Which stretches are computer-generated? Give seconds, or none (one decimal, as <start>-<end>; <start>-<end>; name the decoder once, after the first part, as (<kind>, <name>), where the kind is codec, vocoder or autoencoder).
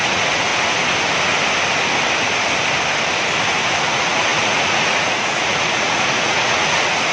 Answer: 0.0-0.5 (vocoder, Vocos); 3.8-7.1